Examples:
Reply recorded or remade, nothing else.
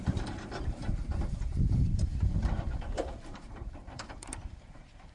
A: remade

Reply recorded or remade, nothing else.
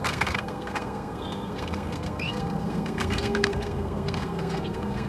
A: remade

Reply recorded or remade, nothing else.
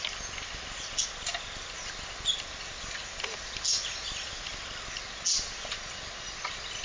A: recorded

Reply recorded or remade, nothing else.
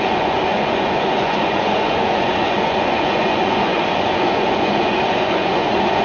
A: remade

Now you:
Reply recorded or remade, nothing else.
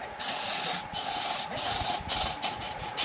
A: remade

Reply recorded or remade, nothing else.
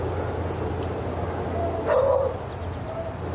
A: recorded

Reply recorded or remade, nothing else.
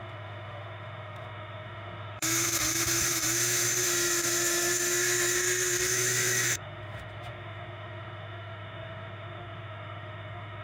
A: remade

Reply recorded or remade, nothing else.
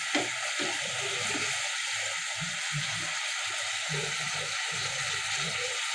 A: recorded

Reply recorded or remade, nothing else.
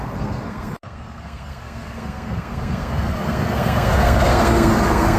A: remade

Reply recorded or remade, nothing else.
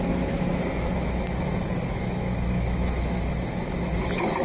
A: remade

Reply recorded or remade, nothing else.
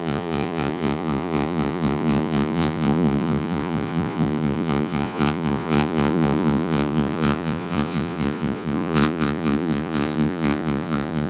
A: remade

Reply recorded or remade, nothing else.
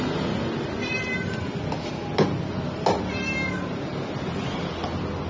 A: recorded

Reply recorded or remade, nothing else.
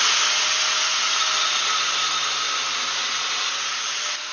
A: recorded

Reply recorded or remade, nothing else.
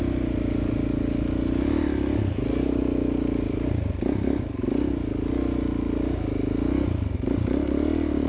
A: recorded